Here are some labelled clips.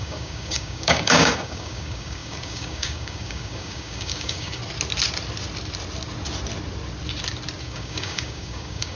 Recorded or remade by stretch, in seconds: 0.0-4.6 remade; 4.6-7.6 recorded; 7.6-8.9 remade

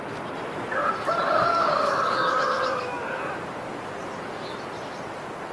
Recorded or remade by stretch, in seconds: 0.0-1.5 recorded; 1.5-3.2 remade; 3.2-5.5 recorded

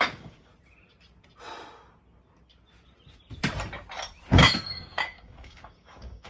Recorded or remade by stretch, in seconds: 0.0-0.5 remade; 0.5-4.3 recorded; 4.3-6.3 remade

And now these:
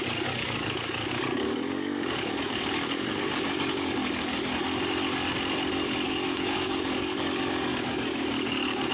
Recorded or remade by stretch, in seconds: 0.0-4.6 remade; 4.6-5.7 recorded; 5.7-8.9 remade

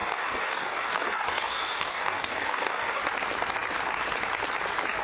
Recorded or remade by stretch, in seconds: 0.0-3.0 remade; 3.0-5.0 recorded

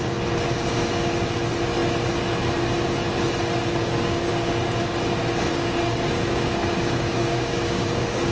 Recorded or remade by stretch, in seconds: 0.0-3.8 recorded; 3.8-4.3 remade; 4.3-5.5 recorded; 5.5-8.3 remade